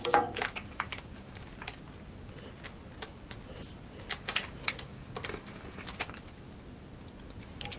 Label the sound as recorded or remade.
recorded